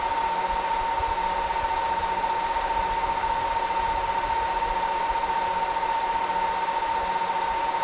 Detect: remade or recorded recorded